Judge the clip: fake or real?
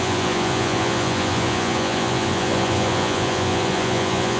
fake